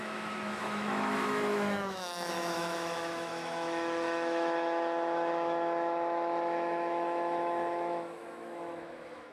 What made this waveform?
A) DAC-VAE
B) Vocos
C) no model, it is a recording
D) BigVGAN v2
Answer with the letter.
A